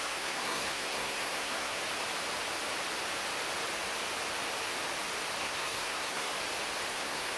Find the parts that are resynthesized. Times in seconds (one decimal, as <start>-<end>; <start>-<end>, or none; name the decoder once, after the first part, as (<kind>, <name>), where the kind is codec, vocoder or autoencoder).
0.0-1.8 (codec, SNAC); 5.4-6.3; 6.9-7.4